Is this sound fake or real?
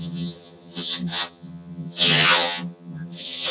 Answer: fake